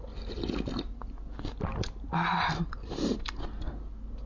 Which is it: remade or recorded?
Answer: recorded